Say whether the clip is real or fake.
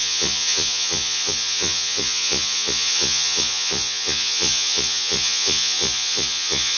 fake